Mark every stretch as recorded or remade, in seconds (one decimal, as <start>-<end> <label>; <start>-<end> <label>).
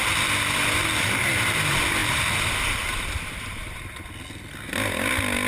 0.0-5.5 recorded